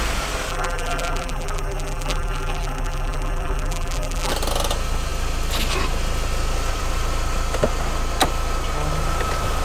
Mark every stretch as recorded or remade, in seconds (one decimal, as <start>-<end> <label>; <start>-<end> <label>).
0.0-0.5 recorded; 0.5-4.3 remade; 4.3-9.6 recorded